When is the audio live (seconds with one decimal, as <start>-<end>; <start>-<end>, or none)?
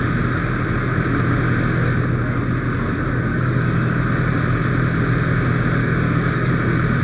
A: 0.0-3.3; 4.0-5.8; 6.5-7.0